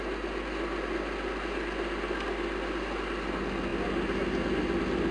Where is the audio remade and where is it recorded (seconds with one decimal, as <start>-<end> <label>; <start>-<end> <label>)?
0.0-5.1 recorded